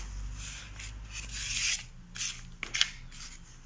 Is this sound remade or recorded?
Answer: recorded